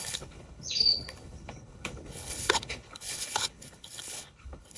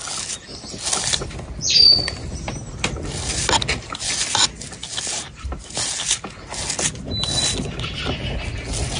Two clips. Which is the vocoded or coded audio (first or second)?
first